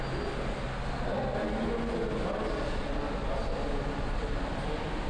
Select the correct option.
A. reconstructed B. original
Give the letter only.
B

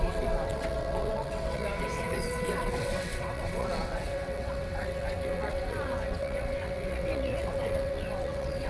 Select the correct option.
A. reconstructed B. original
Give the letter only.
A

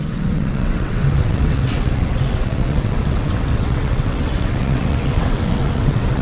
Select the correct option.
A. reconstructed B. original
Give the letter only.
A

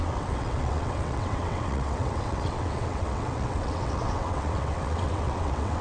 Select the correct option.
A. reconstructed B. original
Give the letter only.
A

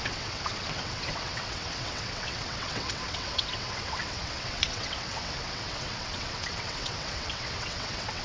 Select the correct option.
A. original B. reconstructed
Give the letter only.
B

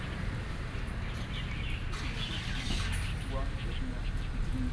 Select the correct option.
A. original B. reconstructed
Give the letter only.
A